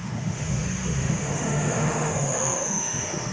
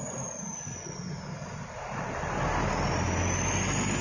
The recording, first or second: second